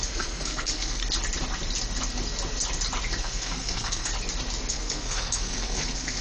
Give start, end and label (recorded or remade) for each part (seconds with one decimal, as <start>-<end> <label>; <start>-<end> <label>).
0.0-1.0 remade; 1.0-3.2 recorded; 3.2-4.1 remade; 4.1-4.7 recorded; 4.7-6.2 remade